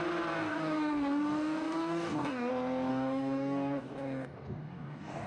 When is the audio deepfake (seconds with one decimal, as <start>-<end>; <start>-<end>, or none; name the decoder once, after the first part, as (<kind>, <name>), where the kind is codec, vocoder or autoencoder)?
0.4-2.5 (codec, DAC); 2.9-5.3